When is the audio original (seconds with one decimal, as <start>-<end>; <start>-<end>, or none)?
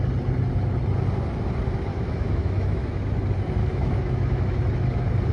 0.0-1.9; 3.0-3.6; 4.6-5.3